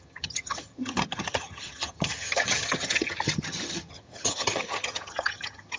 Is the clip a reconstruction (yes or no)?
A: yes